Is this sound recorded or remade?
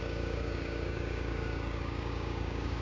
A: remade